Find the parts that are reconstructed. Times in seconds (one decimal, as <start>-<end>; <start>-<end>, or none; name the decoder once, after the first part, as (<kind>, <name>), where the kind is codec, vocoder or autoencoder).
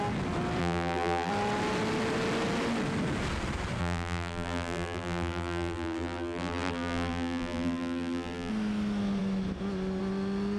0.6-1.3 (vocoder, BigVGAN v2); 3.8-8.5